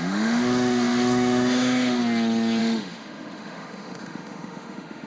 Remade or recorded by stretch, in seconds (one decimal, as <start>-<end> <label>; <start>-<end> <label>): 0.0-2.0 remade; 2.0-2.6 recorded; 2.6-5.1 remade